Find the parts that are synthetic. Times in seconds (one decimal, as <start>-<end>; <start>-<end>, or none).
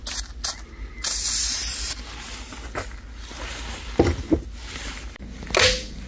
none